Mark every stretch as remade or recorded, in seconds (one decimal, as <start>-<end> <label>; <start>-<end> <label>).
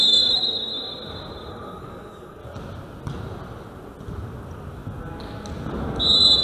0.0-0.7 remade; 0.7-1.5 recorded; 1.5-2.4 remade; 2.4-6.4 recorded